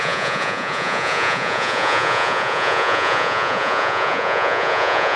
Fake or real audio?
fake